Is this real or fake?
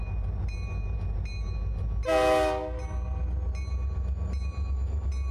real